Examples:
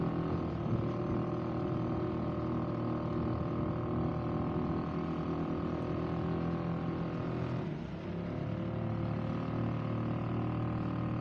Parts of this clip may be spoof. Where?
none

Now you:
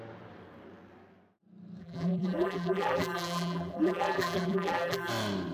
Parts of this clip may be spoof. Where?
1.8-5.1 (vocoder, BigVGAN v2)

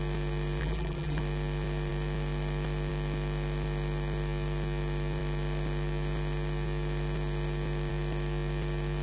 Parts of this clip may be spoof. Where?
0.6-1.2 (vocoder, BigVGAN v2)

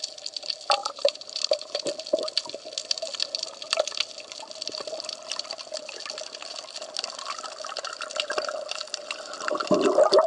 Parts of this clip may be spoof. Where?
0.8-1.8 (vocoder, BigVGAN v2)

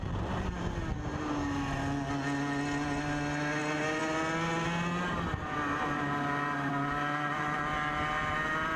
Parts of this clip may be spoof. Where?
none

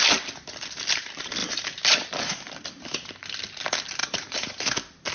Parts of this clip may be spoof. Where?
1.4-2.3 (vocoder, BigVGAN v2); 4.0-4.6

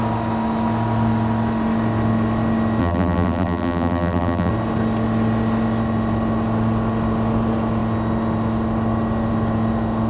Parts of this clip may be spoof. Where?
2.8-4.5 (vocoder, BigVGAN v2)

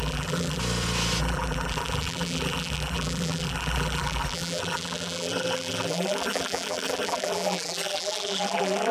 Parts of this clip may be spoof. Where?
0.0-0.6 (vocoder, BigVGAN v2); 1.2-8.9